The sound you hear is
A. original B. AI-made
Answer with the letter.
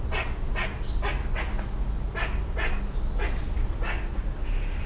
A